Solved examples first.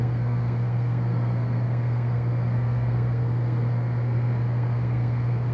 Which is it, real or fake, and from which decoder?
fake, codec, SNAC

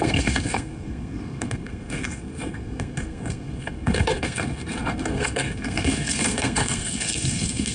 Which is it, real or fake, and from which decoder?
fake, codec, SNAC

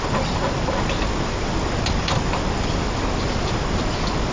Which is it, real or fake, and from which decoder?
real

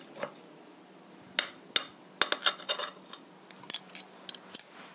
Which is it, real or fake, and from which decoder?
real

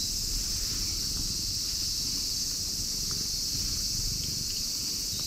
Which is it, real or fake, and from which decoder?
real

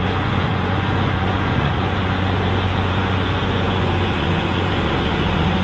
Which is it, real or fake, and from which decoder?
fake, vocoder, Vocos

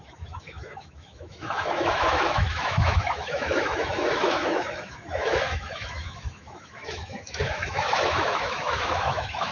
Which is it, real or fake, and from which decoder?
fake, autoencoder, DAC-VAE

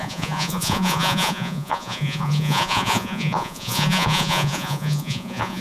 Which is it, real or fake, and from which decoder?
fake, vocoder, Vocos